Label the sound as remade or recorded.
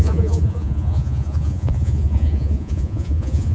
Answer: remade